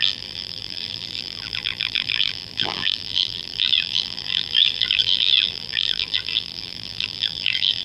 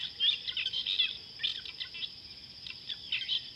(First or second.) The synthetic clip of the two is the first